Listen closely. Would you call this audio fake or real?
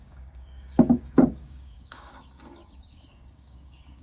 fake